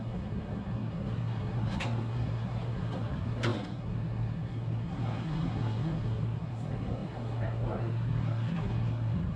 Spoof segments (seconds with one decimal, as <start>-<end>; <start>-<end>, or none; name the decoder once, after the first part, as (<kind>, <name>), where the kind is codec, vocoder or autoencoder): 0.0-9.4 (codec, SNAC)